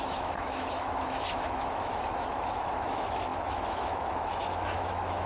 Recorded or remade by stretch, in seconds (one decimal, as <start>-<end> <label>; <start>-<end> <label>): 0.0-5.3 remade